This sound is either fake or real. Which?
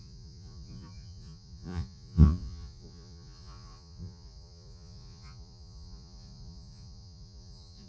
fake